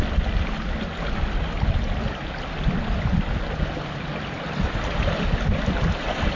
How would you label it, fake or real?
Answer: real